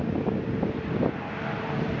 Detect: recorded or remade recorded